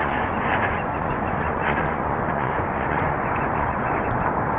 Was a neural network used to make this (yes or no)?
yes